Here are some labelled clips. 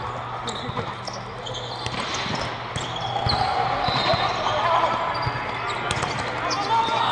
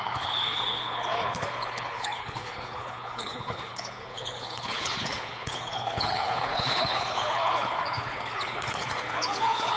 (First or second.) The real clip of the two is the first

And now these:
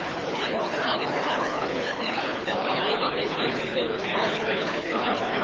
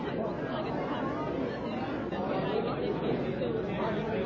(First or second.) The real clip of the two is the second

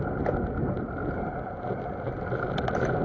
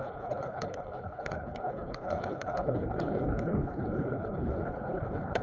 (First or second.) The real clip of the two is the first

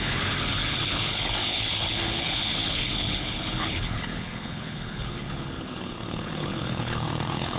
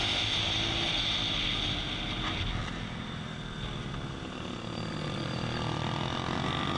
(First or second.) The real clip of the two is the second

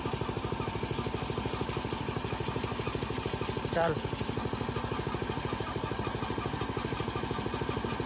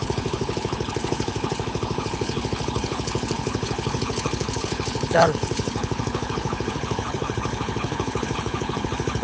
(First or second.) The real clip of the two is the first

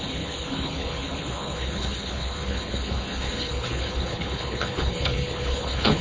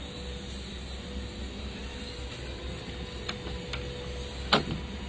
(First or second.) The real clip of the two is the second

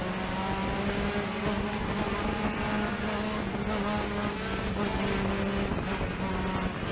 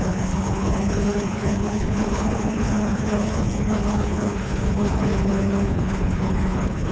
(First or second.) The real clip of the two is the first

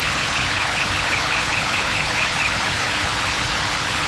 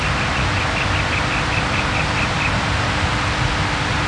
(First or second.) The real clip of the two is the second